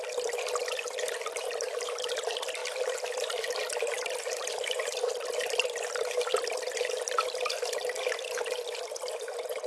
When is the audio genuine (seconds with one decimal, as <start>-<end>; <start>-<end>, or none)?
0.0-9.7